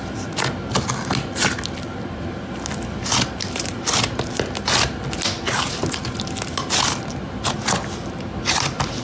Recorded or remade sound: recorded